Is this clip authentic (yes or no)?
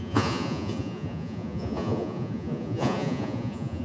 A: no